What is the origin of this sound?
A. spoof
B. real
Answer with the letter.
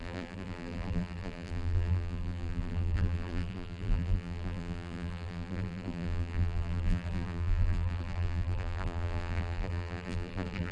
A